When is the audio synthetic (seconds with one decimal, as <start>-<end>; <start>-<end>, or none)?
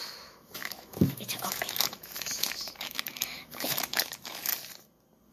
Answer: 0.0-4.5